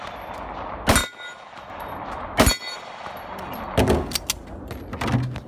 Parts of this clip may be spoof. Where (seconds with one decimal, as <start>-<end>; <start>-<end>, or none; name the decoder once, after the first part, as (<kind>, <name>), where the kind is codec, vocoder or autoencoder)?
none